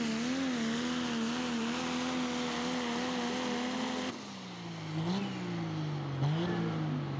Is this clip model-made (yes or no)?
no